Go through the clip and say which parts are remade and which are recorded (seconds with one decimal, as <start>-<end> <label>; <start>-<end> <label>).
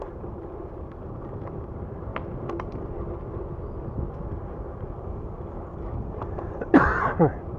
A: 0.0-2.1 remade; 2.1-6.7 recorded; 6.7-7.6 remade